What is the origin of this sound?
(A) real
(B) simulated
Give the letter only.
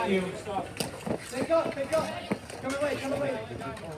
A